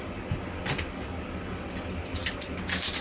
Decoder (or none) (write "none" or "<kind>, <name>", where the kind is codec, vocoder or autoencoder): none